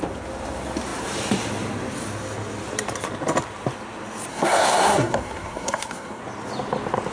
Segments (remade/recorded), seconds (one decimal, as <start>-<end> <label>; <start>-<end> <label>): 0.0-4.3 recorded; 4.3-6.2 remade; 6.2-7.1 recorded